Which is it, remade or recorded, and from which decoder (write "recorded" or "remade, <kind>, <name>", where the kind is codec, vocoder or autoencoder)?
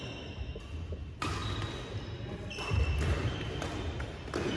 recorded